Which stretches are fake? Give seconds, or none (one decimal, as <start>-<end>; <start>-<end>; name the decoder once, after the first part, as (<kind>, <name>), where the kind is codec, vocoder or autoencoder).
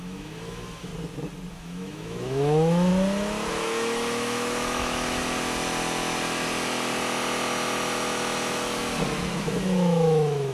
0.0-0.9 (autoencoder, DAC-VAE); 1.5-2.9; 3.5-5.2; 9.4-10.5